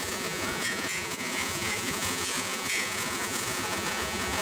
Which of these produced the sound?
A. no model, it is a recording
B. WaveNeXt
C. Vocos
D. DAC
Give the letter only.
C